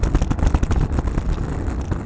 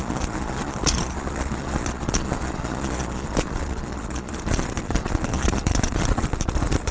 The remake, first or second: second